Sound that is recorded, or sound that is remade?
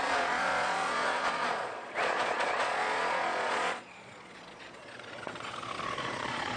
remade